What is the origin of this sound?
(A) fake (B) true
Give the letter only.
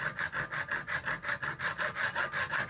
B